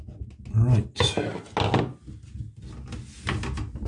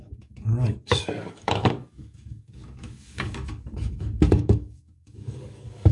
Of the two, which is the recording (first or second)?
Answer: first